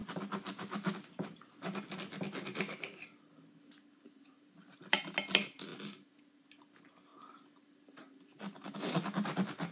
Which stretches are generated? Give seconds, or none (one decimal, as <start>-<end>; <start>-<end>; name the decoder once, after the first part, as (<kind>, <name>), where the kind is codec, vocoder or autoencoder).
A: none